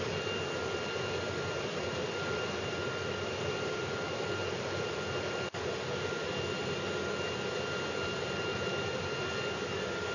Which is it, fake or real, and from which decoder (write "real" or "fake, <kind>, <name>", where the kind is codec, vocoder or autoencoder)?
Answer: real